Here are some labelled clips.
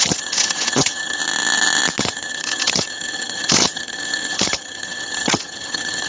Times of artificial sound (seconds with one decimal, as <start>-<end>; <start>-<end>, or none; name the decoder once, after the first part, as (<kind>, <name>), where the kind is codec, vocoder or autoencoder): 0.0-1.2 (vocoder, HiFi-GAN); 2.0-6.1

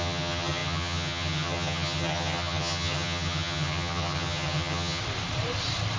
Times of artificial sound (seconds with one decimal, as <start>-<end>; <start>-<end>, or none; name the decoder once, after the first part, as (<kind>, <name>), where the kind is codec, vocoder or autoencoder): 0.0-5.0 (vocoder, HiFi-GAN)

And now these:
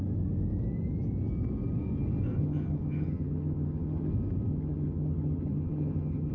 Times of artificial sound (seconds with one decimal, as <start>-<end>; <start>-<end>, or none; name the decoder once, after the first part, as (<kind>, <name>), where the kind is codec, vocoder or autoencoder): 2.4-4.1 (vocoder, HiFi-GAN); 4.5-6.3